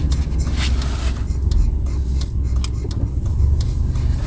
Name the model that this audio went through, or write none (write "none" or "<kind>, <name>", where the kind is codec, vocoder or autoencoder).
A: none